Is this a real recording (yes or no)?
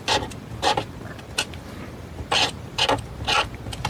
yes